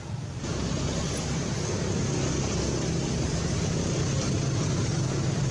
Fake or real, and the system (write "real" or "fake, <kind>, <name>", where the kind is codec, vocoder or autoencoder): real